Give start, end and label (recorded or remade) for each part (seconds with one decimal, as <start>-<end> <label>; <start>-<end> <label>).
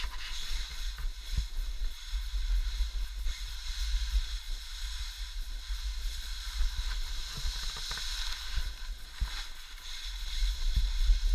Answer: 0.0-11.3 recorded